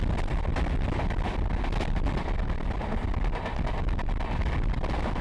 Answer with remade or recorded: recorded